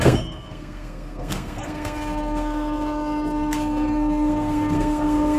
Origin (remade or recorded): remade